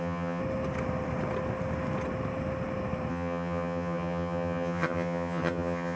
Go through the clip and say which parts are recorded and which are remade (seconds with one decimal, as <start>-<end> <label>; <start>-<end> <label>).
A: 0.0-0.4 remade; 0.4-3.1 recorded; 3.1-6.0 remade